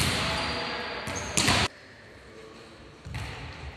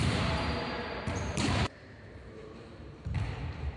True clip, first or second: first